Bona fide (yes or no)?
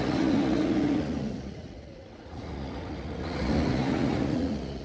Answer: no